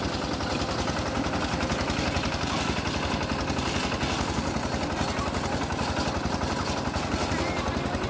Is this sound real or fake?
real